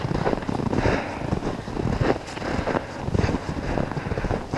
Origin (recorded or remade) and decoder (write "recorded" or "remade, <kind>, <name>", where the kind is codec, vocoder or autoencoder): recorded